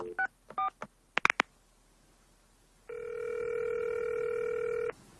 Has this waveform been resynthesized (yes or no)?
no